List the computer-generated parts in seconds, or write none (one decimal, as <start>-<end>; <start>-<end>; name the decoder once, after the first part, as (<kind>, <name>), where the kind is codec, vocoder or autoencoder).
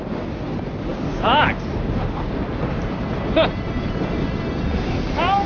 none